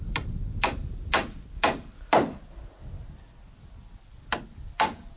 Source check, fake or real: real